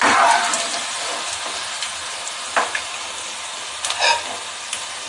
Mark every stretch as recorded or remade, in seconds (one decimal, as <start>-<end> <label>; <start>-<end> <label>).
0.0-2.0 recorded; 2.0-3.1 remade; 3.1-5.1 recorded